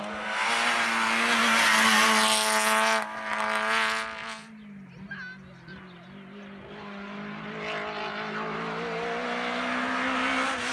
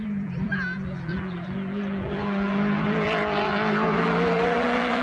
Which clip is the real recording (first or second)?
first